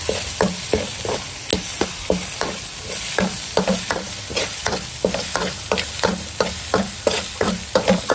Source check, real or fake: real